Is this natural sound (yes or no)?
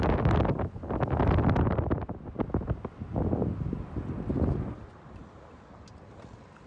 yes